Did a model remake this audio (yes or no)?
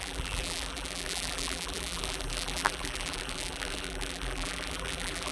yes